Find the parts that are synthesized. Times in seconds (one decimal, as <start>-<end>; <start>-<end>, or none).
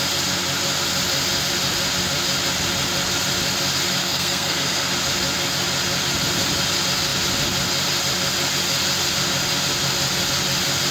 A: 4.0-4.9